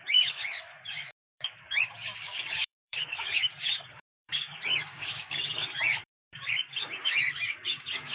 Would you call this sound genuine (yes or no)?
no